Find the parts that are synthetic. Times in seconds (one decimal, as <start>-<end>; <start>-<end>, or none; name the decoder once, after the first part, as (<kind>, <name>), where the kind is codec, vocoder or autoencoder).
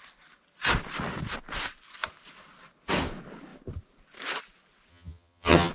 4.9-5.7 (vocoder, HiFi-GAN)